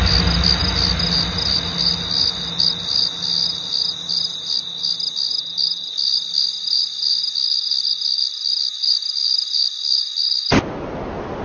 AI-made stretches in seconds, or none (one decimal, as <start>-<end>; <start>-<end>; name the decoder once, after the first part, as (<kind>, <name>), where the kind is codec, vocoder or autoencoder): none